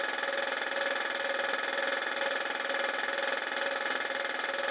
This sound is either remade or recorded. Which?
recorded